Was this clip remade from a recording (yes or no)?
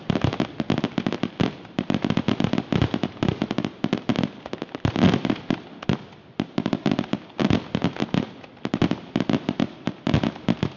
no